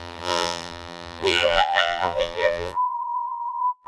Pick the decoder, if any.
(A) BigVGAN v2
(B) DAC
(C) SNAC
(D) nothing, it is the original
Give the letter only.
A